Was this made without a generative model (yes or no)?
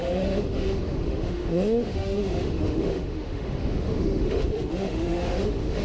no